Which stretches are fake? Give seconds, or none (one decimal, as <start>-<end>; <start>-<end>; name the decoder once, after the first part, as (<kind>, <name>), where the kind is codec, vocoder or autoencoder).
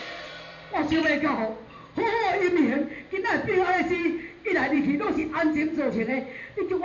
0.0-1.0 (vocoder, BigVGAN v2); 2.0-5.2; 5.9-6.8